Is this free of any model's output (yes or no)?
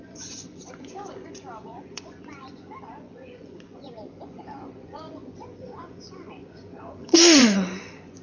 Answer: no